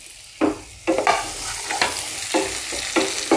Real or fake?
real